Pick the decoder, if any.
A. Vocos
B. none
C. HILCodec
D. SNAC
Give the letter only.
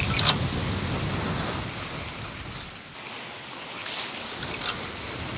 B